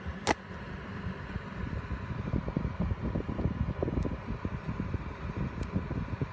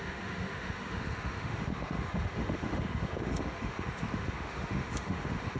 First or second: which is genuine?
first